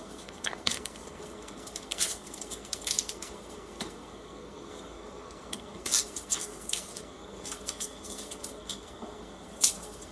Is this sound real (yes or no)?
no